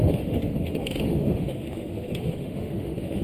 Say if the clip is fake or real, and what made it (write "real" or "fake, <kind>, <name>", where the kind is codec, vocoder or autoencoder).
fake, autoencoder, DAC-VAE